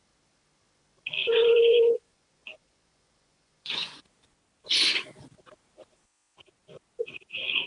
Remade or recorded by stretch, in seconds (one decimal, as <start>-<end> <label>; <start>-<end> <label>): 0.0-1.2 recorded; 1.2-4.0 remade; 4.0-7.7 recorded